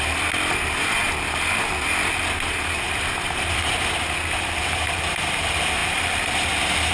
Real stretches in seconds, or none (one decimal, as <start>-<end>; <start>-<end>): 0.0-6.9